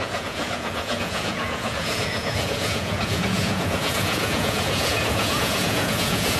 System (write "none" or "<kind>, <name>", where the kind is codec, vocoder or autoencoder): vocoder, Vocos